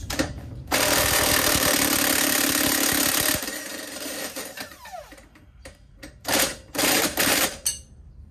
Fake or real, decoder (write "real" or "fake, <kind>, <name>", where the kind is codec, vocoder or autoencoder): fake, vocoder, BigVGAN v2